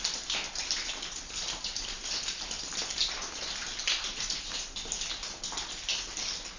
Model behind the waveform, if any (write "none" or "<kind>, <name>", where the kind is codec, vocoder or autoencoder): none